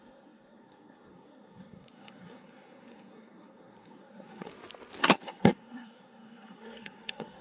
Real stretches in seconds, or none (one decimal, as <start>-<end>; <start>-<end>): 4.5-5.0